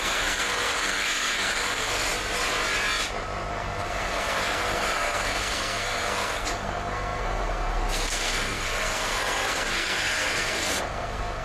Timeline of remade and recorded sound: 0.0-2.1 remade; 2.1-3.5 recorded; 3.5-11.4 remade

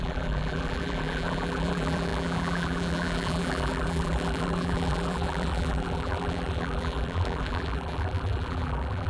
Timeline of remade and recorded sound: 0.0-9.1 remade

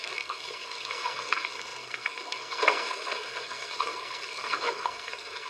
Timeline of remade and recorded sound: 0.0-5.5 remade

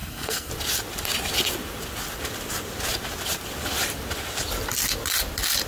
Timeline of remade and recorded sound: 0.0-0.5 remade; 0.5-5.7 recorded

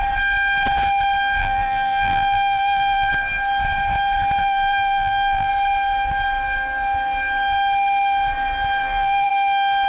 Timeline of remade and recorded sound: 0.0-1.4 recorded; 1.4-3.1 remade; 3.1-4.4 recorded; 4.4-5.5 remade; 5.5-8.8 recorded; 8.8-9.3 remade; 9.3-9.9 recorded